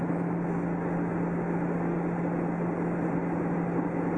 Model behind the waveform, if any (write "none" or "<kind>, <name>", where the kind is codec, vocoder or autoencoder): none